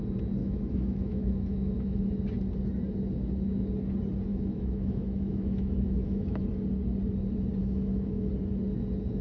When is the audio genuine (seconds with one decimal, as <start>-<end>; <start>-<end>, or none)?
0.0-0.4; 2.1-4.3; 6.4-7.6; 8.3-9.2